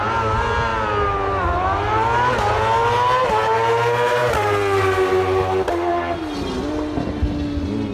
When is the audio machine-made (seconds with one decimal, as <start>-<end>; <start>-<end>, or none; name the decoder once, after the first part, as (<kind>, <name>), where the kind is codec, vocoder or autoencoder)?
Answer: none